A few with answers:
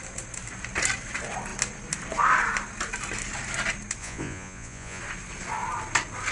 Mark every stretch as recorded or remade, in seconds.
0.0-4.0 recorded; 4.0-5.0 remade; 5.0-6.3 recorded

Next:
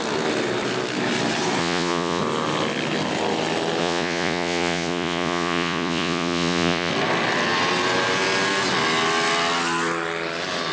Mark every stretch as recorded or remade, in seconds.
0.0-1.6 recorded; 1.6-2.2 remade; 2.2-3.8 recorded; 3.8-6.9 remade; 6.9-10.7 recorded

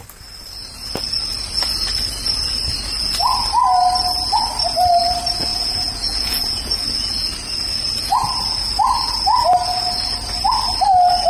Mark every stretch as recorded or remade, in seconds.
0.0-5.5 recorded; 5.5-6.8 remade; 6.8-11.3 recorded

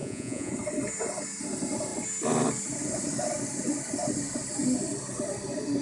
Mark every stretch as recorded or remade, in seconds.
0.0-0.5 remade; 0.5-5.8 recorded

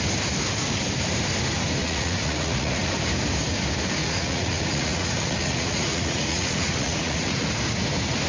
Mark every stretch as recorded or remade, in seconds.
0.0-1.8 recorded; 1.8-2.9 remade; 2.9-4.0 recorded; 4.0-7.5 remade; 7.5-8.3 recorded

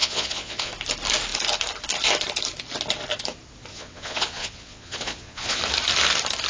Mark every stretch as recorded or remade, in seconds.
0.0-0.7 remade; 0.7-3.7 recorded; 3.7-5.6 remade; 5.6-6.5 recorded